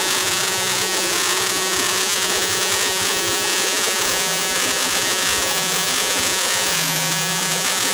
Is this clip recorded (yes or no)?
no